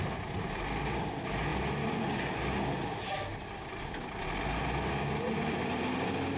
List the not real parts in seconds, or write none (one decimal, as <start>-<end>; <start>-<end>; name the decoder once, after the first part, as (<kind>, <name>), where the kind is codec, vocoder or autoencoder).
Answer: none